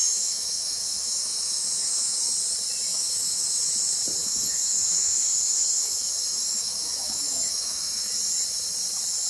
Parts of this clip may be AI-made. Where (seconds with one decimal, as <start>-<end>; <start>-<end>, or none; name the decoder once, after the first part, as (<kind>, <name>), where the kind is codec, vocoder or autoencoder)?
0.0-2.2 (autoencoder, DAC-VAE); 2.9-3.6; 4.2-8.1